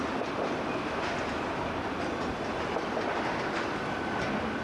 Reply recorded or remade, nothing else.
recorded